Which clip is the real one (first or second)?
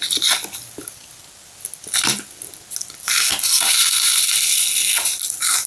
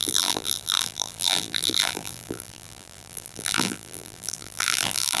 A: first